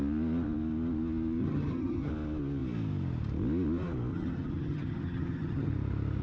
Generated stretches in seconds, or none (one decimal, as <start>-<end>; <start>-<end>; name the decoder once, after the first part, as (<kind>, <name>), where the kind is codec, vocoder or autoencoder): 1.4-2.1 (vocoder, HiFi-GAN); 4.1-5.7